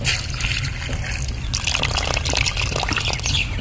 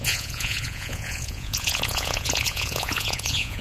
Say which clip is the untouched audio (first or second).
first